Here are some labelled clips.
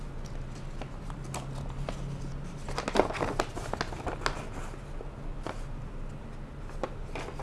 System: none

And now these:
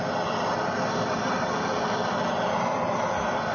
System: none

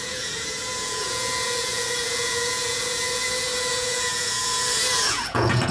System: vocoder, Vocos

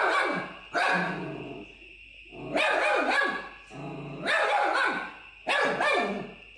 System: none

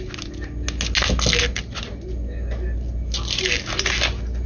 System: none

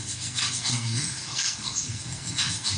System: codec, SNAC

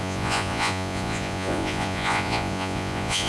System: vocoder, Vocos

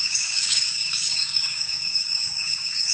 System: codec, DAC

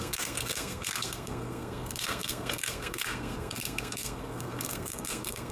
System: codec, SNAC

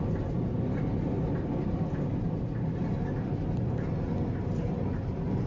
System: none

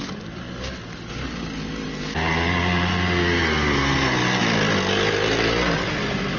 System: none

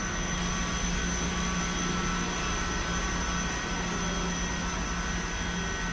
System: none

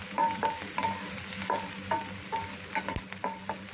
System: vocoder, BigVGAN v2